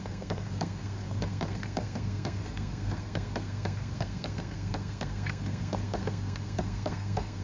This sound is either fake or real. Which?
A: fake